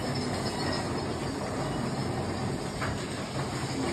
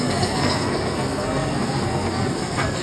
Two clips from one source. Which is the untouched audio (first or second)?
first